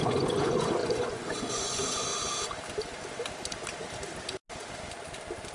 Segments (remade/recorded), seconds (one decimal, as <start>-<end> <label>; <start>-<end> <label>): 0.0-2.1 remade; 2.1-5.5 recorded